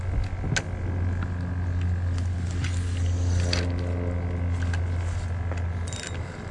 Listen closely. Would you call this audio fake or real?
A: real